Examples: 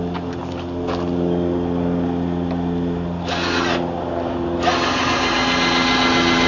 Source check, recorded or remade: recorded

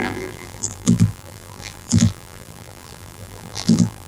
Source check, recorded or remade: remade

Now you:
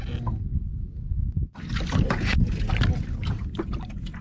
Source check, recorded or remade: recorded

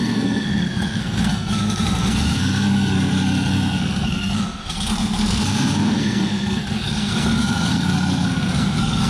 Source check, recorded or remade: remade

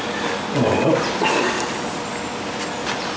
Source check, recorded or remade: recorded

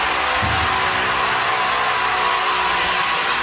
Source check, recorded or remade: recorded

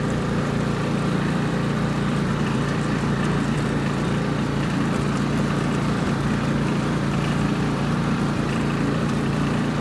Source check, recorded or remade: remade